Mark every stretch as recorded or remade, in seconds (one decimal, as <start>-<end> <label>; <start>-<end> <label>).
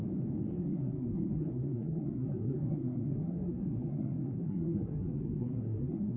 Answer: 0.0-0.6 recorded; 0.6-6.2 remade